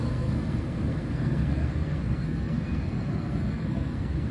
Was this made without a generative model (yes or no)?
no